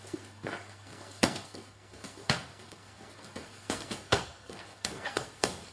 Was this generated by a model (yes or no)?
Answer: yes